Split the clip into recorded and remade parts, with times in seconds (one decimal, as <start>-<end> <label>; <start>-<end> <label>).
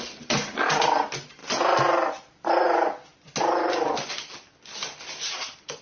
0.0-5.8 recorded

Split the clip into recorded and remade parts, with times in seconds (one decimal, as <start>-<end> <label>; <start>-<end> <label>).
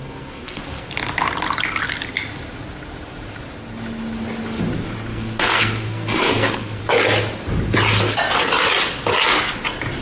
0.0-0.9 remade; 0.9-5.1 recorded; 5.1-6.8 remade; 6.8-10.0 recorded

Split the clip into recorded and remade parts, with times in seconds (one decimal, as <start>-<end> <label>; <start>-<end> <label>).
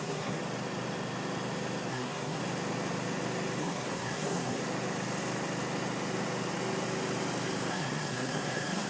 0.0-0.4 remade; 0.4-1.9 recorded; 1.9-2.4 remade; 2.4-3.6 recorded; 3.6-4.6 remade; 4.6-7.7 recorded; 7.7-8.9 remade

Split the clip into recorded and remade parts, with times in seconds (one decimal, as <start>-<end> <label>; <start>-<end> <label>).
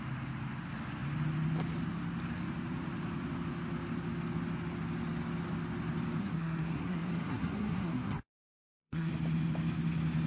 0.0-6.2 recorded; 6.2-9.1 remade; 9.1-10.3 recorded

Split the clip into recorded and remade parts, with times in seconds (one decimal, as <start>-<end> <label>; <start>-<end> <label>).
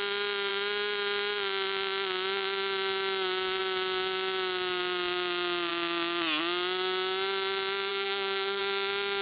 0.0-7.9 recorded; 7.9-8.6 remade; 8.6-9.2 recorded